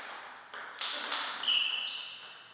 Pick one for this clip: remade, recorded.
recorded